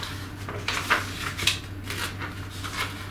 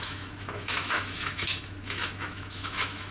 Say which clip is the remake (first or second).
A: second